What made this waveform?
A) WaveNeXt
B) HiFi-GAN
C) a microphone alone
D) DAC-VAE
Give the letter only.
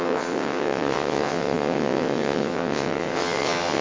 A